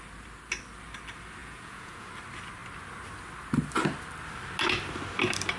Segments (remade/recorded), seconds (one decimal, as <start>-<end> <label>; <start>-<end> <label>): 0.0-1.4 recorded; 1.4-2.1 remade; 2.1-5.6 recorded